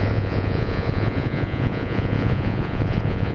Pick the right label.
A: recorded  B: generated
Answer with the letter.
B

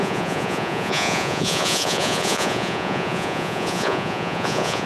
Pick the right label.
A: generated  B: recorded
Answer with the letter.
A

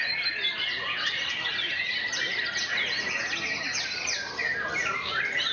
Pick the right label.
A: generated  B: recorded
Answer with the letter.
B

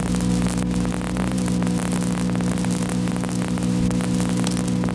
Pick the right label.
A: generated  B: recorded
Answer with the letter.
B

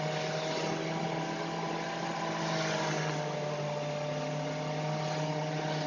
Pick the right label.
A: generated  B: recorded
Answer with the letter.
B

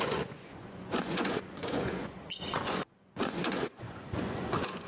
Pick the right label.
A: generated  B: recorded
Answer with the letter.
A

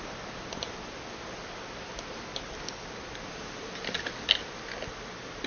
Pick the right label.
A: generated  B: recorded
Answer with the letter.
B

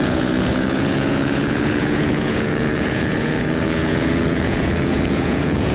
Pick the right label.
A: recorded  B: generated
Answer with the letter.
B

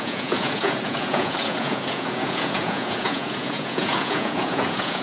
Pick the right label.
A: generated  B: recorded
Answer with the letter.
A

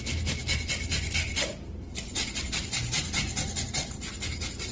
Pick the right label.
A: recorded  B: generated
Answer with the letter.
A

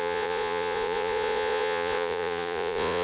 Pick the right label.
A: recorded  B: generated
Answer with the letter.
B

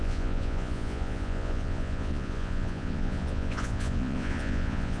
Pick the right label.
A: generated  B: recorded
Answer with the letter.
A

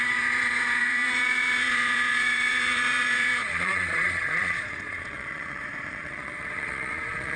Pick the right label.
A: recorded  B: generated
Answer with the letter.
B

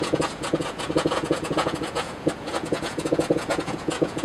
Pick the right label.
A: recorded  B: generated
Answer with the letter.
B